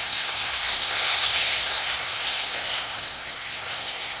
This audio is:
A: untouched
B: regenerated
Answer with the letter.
B